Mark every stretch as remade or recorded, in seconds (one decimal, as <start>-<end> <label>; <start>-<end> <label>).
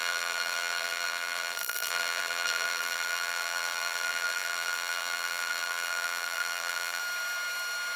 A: 0.0-7.0 remade; 7.0-8.0 recorded